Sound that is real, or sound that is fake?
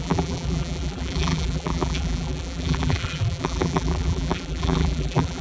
fake